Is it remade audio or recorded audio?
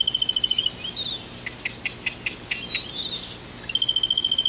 recorded